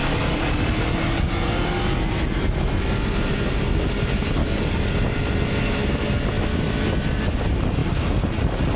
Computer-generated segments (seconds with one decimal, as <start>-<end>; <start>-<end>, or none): 4.4-4.9